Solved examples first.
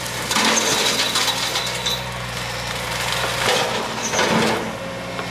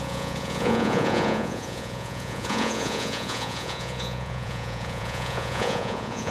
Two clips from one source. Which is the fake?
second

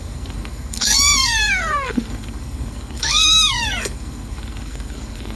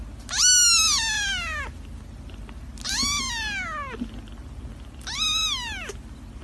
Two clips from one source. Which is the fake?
first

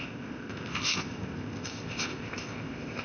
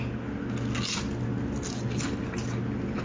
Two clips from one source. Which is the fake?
first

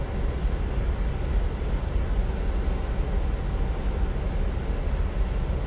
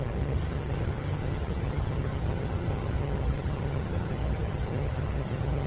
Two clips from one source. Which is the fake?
second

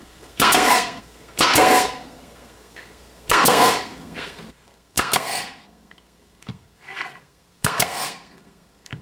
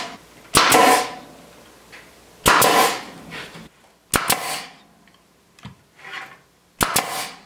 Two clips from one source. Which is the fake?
first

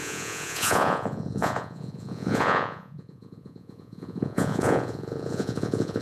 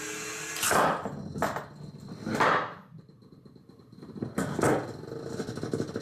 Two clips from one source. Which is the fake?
first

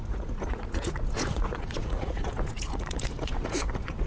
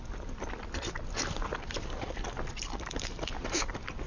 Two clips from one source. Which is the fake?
first